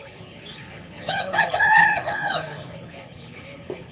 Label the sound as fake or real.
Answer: fake